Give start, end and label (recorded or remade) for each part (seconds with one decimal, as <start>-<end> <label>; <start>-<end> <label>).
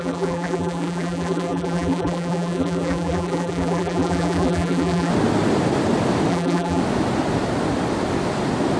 0.0-5.1 remade; 5.1-6.3 recorded; 6.3-6.8 remade; 6.8-8.8 recorded